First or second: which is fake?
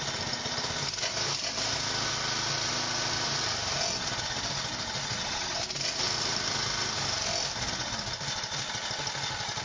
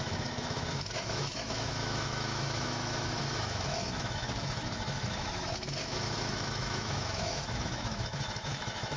second